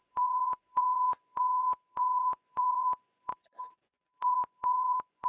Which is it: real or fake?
fake